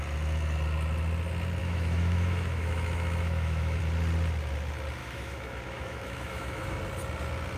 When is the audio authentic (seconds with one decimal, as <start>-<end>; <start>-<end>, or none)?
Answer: 0.0-1.6; 3.8-5.0; 6.8-7.6